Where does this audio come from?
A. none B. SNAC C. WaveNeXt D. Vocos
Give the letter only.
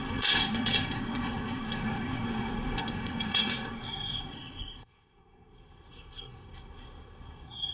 B